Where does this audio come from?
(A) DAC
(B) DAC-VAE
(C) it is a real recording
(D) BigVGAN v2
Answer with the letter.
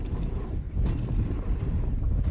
C